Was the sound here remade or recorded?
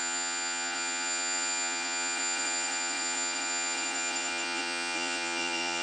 remade